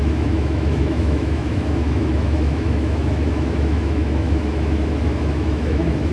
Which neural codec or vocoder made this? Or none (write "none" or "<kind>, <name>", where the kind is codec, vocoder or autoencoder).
autoencoder, DAC-VAE